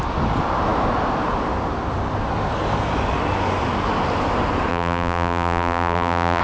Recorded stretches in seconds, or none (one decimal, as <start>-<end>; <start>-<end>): 0.0-4.7